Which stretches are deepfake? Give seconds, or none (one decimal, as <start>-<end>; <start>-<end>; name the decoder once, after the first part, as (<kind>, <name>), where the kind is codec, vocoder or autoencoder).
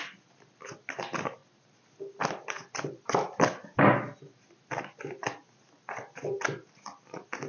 none